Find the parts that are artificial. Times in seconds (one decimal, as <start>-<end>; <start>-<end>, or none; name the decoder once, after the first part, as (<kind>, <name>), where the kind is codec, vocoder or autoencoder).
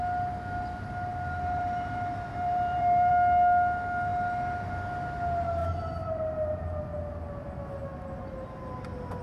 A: 1.1-3.1 (vocoder, BigVGAN v2); 5.6-6.6